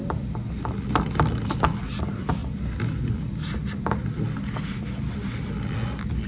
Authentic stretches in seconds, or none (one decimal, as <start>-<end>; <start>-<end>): 0.0-6.3